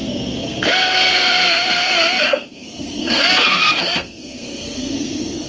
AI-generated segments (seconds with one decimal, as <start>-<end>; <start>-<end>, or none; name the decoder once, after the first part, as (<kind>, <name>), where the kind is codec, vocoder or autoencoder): 0.0-5.5 (codec, SNAC)